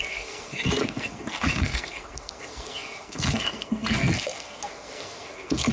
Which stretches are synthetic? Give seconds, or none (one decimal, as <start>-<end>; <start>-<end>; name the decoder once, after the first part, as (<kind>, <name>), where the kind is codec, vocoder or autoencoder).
0.0-5.7 (codec, SNAC)